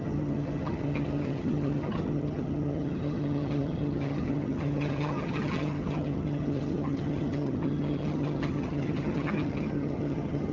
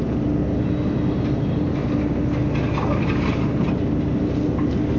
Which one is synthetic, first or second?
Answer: first